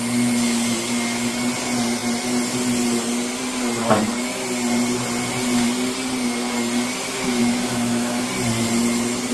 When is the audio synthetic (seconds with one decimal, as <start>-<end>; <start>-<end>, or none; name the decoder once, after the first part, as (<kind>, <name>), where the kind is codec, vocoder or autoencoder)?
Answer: 7.4-8.2 (autoencoder, DAC-VAE)